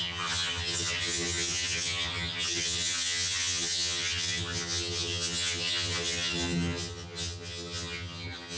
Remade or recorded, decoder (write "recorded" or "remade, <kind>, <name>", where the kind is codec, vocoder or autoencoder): remade, vocoder, HiFi-GAN